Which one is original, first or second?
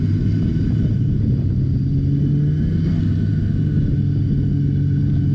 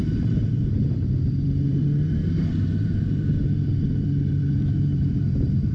first